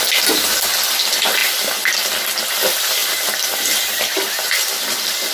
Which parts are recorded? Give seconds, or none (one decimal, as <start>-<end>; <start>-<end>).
0.0-5.3